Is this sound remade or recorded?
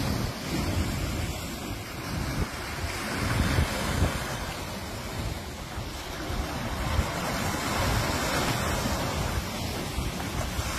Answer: recorded